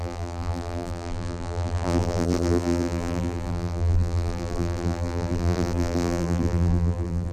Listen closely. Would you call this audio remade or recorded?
remade